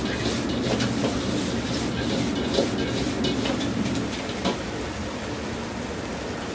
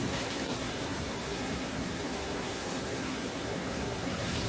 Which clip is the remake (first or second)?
second